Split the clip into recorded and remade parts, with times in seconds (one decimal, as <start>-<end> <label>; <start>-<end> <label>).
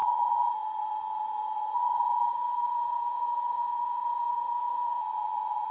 0.0-5.7 remade